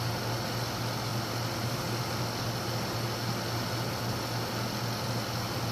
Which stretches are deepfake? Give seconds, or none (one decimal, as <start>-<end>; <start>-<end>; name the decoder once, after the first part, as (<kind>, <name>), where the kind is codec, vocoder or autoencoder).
none